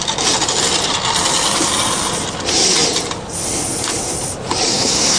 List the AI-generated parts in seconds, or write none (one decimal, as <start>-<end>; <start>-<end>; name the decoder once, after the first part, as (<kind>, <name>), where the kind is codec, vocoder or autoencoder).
4.7-5.2 (codec, SNAC)